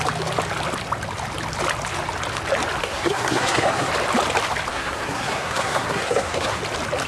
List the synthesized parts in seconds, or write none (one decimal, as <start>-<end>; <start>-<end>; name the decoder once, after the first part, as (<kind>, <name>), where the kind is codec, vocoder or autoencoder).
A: 2.8-3.9 (codec, SNAC); 4.7-6.6